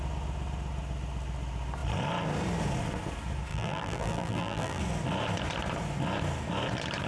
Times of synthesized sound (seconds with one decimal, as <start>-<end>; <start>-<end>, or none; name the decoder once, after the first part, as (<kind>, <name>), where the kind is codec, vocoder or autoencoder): 3.5-4.8 (vocoder, BigVGAN v2)